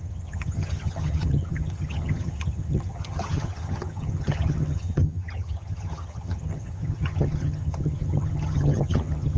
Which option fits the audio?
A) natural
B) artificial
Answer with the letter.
B